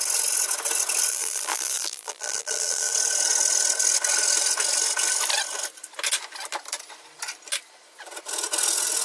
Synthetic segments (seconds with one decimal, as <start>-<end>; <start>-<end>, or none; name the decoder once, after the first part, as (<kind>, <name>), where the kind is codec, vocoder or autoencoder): 1.1-2.9 (vocoder, BigVGAN v2)